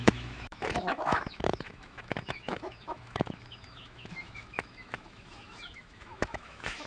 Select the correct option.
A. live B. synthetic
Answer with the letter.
B